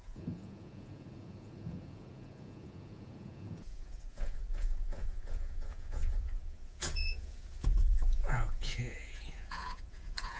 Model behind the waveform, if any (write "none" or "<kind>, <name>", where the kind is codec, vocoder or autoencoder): vocoder, Vocos